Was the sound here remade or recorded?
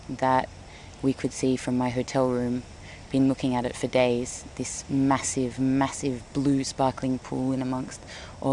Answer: recorded